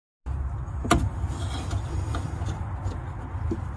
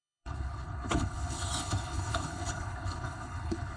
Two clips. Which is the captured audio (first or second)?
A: first